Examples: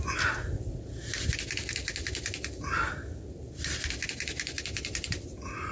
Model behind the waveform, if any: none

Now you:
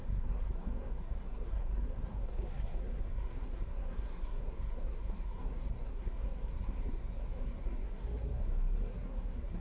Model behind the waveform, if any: codec, SNAC